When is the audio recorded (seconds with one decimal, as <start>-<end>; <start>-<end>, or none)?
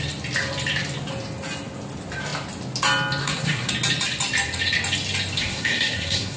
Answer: 0.0-3.2; 3.7-5.4